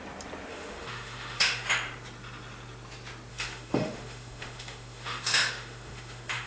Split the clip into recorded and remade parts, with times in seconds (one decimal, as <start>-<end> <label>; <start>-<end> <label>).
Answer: 0.0-0.5 recorded; 0.5-1.7 remade; 1.7-3.3 recorded; 3.3-6.5 remade